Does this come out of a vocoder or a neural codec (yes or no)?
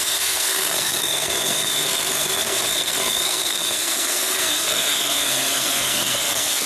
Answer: yes